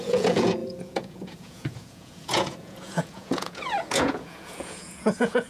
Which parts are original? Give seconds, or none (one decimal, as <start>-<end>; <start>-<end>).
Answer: none

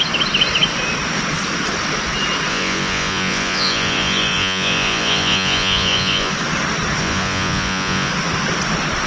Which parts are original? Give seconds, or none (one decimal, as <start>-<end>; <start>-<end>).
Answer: 0.0-2.5; 6.3-7.0; 8.1-9.1

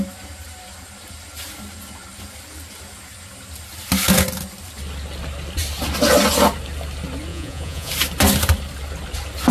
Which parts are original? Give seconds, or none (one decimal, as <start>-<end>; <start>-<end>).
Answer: 0.0-7.3; 7.9-9.5

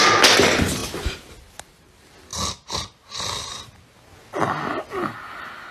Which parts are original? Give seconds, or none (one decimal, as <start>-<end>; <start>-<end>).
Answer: 0.0-5.7

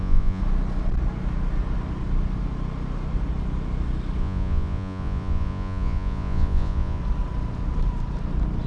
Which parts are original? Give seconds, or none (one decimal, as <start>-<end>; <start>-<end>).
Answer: 0.4-4.2; 7.0-8.7

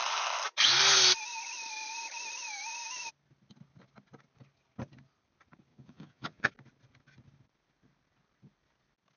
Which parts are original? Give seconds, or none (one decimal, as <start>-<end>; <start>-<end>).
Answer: 0.0-5.7; 6.5-9.2

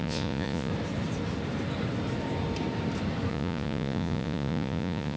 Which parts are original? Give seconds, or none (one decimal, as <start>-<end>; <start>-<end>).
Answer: 0.7-3.3

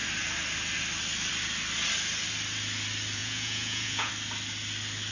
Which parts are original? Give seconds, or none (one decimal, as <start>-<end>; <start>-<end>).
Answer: 0.0-3.2; 4.1-5.1